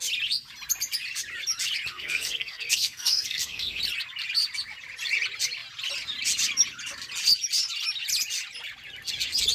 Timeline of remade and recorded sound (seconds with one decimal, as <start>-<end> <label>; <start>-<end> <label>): 0.0-1.9 recorded; 1.9-3.8 remade; 3.8-9.5 recorded